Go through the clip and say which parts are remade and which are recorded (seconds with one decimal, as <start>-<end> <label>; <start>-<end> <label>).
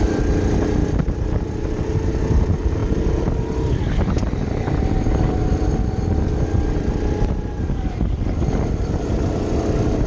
0.0-0.8 recorded; 0.8-2.2 remade; 2.2-10.1 recorded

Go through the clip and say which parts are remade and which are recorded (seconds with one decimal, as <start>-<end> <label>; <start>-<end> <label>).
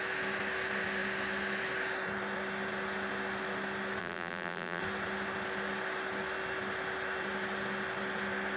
0.0-4.0 recorded; 4.0-4.8 remade; 4.8-8.6 recorded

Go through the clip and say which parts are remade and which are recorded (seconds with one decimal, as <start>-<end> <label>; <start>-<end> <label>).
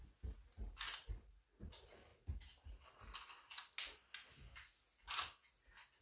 0.0-6.0 recorded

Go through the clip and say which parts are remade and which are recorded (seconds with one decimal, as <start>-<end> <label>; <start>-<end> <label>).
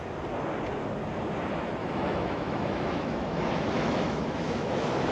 0.0-1.8 recorded; 1.8-5.1 remade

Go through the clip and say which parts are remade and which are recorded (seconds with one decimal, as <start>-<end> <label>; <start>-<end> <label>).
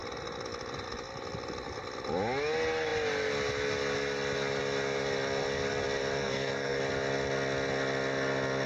0.0-6.2 recorded; 6.2-6.8 remade; 6.8-8.7 recorded